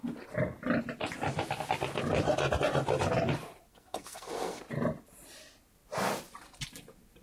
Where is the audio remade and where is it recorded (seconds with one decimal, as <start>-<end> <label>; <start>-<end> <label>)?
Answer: 0.0-3.7 recorded; 3.7-4.6 remade; 4.6-7.2 recorded